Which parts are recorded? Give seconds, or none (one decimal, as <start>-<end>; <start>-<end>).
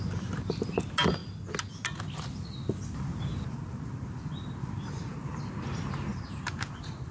0.0-6.1; 6.6-7.1